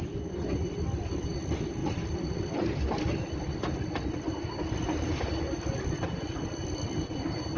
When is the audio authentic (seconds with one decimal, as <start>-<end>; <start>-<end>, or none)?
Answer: 0.0-7.6